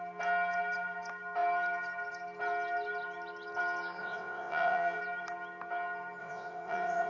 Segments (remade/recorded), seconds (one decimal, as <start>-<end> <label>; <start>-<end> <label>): 0.0-4.0 recorded; 4.0-5.0 remade; 5.0-6.2 recorded; 6.2-7.1 remade